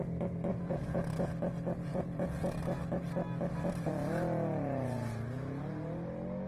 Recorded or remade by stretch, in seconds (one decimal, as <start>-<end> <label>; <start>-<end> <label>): 0.0-0.5 recorded; 0.5-1.3 remade; 1.3-1.9 recorded; 1.9-2.6 remade; 2.6-6.5 recorded